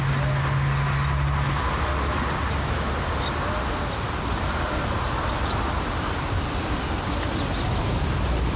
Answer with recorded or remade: recorded